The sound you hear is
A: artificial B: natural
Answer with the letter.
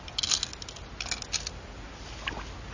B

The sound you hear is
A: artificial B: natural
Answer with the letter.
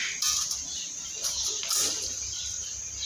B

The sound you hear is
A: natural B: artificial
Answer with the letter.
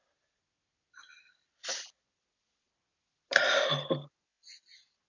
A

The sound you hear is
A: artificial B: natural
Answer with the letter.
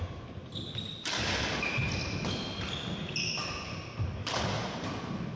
B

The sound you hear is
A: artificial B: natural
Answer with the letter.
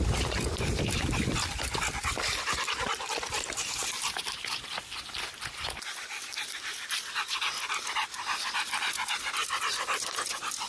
B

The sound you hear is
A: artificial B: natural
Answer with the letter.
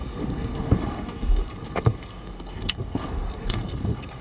A